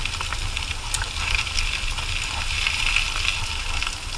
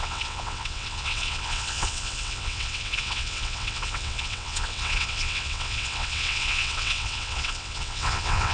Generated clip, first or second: second